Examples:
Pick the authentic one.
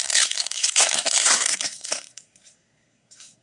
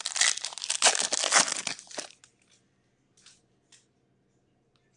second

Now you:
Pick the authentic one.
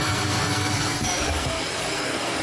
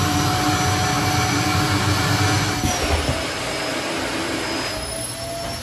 second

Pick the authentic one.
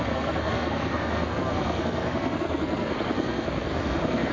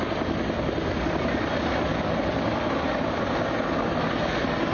second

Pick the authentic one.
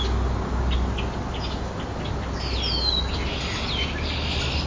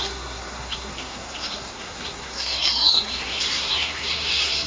first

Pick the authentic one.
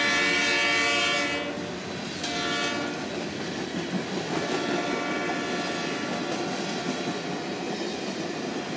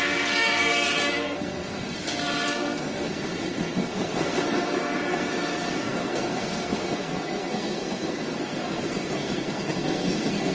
first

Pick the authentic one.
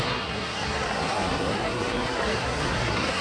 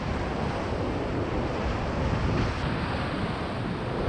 second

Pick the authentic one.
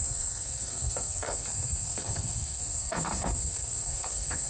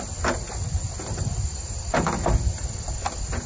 second